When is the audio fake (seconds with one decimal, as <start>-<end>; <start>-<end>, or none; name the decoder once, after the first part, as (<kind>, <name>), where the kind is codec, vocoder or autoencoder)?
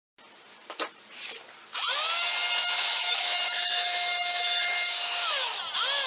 2.6-5.6 (autoencoder, DAC-VAE)